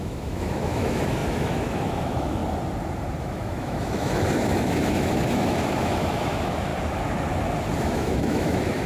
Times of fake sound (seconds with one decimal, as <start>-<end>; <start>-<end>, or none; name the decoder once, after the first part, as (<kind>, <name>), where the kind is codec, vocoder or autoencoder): 0.0-2.4 (autoencoder, DAC-VAE); 3.2-6.7; 7.8-8.9